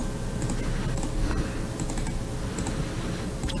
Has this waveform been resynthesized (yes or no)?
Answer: no